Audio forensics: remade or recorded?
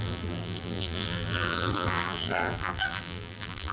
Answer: remade